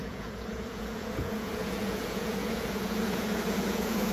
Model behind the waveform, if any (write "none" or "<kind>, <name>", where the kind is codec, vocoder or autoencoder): vocoder, Vocos